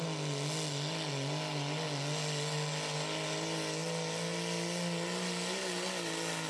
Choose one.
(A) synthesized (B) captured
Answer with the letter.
B